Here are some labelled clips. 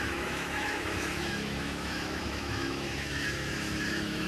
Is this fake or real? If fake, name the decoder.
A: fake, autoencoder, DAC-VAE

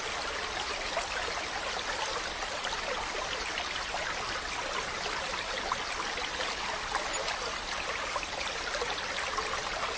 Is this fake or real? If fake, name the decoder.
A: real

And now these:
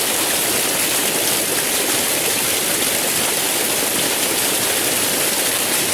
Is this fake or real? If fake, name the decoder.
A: real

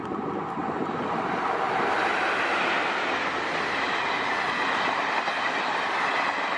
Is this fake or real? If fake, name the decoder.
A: real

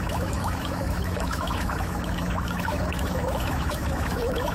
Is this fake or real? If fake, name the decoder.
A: fake, autoencoder, DAC-VAE